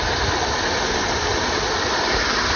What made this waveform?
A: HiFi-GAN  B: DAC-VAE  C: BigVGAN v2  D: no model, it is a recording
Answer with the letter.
C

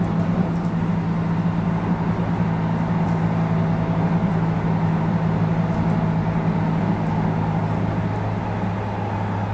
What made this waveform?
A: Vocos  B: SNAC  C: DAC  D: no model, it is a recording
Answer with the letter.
D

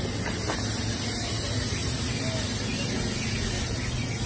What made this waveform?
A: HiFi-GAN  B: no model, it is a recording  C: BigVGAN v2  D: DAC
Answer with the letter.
B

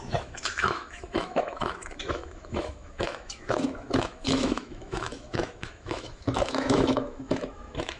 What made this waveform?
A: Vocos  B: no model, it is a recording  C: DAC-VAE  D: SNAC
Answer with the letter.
C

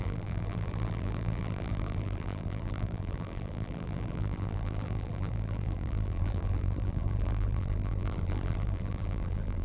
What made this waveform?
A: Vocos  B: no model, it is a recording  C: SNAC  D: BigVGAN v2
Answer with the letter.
D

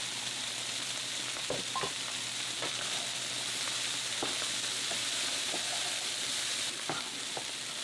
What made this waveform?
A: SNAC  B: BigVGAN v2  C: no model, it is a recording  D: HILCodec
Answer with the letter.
B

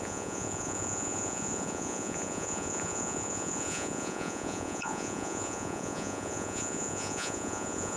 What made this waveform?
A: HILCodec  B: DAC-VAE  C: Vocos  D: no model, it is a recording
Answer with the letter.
C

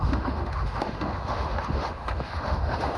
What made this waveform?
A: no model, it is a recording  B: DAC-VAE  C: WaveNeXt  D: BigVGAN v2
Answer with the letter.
B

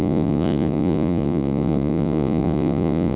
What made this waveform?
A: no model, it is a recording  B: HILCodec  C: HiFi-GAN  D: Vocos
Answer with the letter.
D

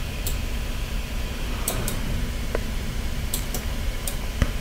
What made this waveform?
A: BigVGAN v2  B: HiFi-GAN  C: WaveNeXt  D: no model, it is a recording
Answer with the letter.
A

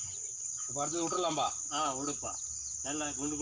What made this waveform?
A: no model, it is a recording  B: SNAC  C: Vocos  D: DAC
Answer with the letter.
A